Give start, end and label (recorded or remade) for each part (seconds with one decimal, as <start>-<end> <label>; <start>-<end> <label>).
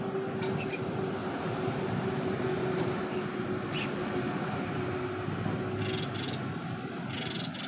0.0-1.2 recorded; 1.2-2.9 remade; 2.9-4.0 recorded; 4.0-4.7 remade; 4.7-7.7 recorded